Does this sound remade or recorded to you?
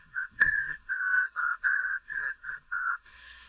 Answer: remade